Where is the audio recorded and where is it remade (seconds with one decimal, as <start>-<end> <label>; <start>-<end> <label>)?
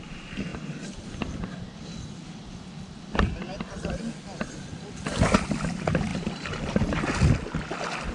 0.0-0.5 recorded; 0.5-3.9 remade; 3.9-6.1 recorded; 6.1-7.0 remade; 7.0-8.1 recorded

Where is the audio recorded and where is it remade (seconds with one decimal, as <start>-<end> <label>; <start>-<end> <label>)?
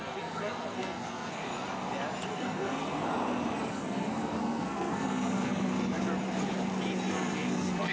0.0-1.4 remade; 1.4-2.3 recorded; 2.3-3.1 remade; 3.1-3.7 recorded; 3.7-5.7 remade; 5.7-7.1 recorded; 7.1-7.9 remade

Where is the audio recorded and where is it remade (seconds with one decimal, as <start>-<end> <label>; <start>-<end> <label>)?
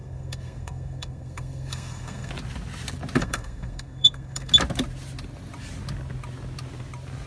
0.0-2.3 remade; 2.3-3.2 recorded; 3.2-4.5 remade; 4.5-7.3 recorded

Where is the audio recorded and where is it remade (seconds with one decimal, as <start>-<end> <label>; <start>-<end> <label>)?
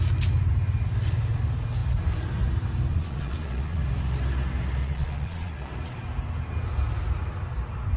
0.0-2.9 recorded; 2.9-3.8 remade; 3.8-4.8 recorded; 4.8-5.7 remade; 5.7-8.0 recorded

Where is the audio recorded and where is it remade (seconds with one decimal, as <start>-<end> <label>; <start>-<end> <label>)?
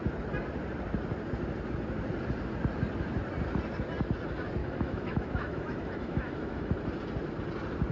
0.0-4.6 recorded; 4.6-6.7 remade; 6.7-7.9 recorded